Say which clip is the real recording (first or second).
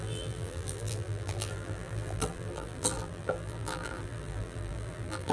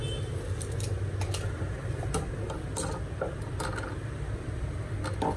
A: second